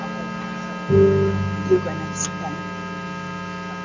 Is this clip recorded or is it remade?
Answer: recorded